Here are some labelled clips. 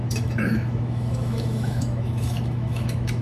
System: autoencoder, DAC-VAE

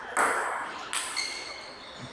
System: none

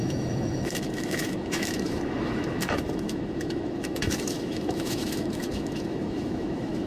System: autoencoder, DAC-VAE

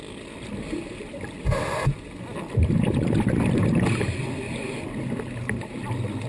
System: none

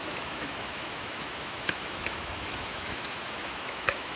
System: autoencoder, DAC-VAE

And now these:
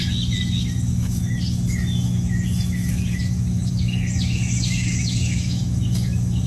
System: autoencoder, DAC-VAE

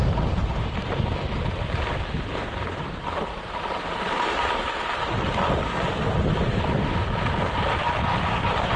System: none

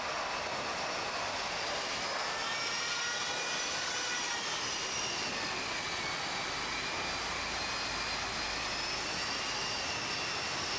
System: none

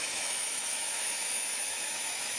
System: autoencoder, DAC-VAE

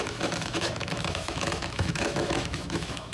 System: autoencoder, DAC-VAE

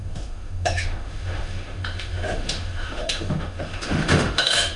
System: autoencoder, DAC-VAE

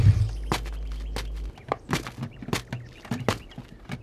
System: none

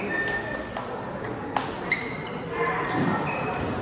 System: none